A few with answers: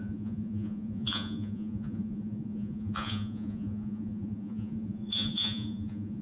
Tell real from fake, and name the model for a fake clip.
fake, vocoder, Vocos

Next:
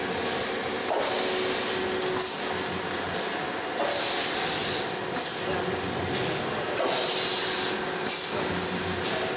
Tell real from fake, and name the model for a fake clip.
real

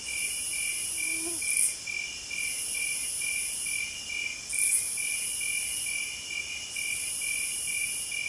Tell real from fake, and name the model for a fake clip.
real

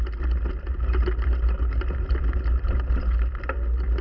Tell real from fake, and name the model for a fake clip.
real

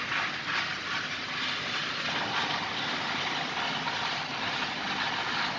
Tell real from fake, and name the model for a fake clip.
real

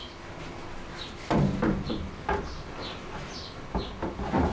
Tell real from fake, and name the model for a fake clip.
real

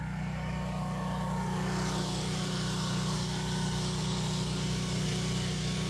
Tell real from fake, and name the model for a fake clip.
fake, codec, DAC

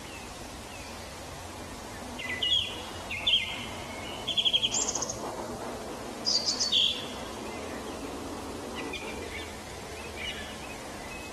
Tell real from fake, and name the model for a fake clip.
real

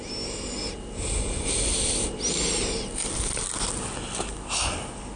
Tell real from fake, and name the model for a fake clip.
real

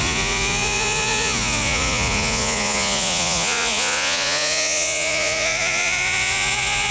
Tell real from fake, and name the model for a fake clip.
fake, vocoder, Vocos